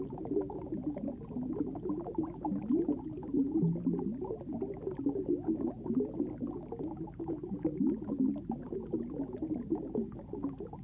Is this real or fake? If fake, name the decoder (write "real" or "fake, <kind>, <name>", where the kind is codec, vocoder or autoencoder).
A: real